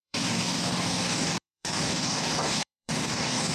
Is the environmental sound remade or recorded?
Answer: remade